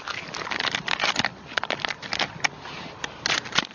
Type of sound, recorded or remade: recorded